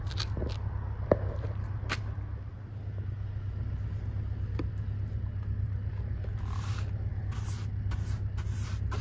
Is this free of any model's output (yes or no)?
yes